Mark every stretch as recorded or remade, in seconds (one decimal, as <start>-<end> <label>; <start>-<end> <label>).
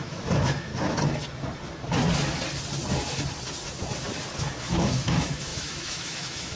0.0-0.7 remade; 0.7-4.6 recorded; 4.6-6.6 remade